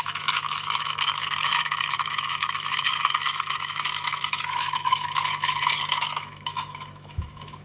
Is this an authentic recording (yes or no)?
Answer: no